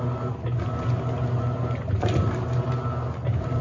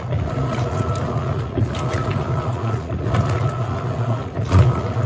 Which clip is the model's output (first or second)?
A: second